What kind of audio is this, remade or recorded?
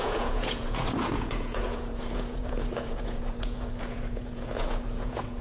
remade